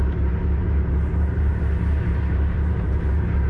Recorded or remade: remade